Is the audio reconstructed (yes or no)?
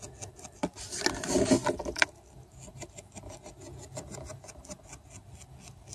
no